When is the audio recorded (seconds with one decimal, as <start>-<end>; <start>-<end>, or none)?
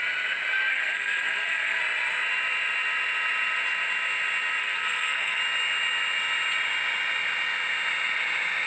0.0-0.7; 1.8-4.6; 5.4-8.7